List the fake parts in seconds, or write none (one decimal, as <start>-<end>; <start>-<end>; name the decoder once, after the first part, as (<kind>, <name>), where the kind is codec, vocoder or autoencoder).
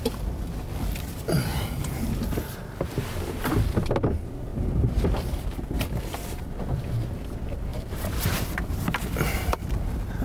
4.5-6.8 (vocoder, BigVGAN v2); 7.7-9.5